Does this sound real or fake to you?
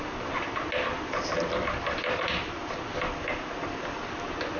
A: real